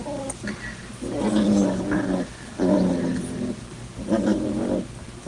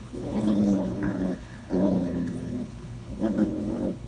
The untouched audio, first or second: first